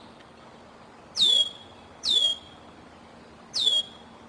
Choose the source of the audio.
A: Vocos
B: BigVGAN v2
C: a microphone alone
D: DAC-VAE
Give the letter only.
C